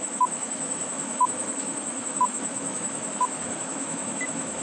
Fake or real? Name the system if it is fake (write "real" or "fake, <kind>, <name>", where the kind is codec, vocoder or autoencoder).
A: fake, autoencoder, DAC-VAE